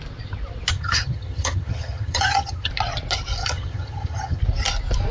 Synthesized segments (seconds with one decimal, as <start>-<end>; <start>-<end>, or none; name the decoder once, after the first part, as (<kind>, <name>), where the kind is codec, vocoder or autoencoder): 0.7-2.7 (vocoder, HiFi-GAN); 3.4-4.4